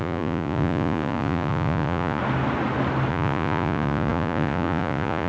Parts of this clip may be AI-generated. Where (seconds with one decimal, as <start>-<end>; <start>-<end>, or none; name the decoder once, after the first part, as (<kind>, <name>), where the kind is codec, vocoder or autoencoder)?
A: 0.0-2.2 (vocoder, Vocos); 3.1-5.3